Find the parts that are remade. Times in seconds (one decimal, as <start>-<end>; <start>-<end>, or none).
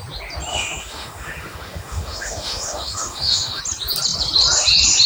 0.5-3.6